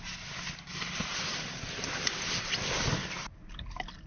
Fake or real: real